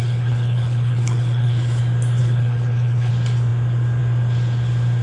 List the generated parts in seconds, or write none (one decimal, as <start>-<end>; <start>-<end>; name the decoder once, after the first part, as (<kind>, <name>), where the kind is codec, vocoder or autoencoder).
0.0-1.8 (codec, HILCodec); 2.2-3.1